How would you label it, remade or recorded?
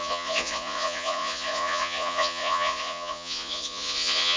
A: remade